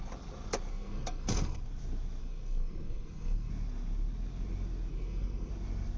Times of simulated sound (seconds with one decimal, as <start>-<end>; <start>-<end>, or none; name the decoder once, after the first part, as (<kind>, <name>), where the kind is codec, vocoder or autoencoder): 0.7-1.6 (codec, SNAC); 2.2-3.5; 4.9-5.5